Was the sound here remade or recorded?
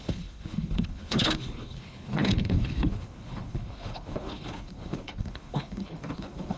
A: remade